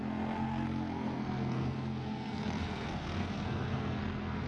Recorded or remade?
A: remade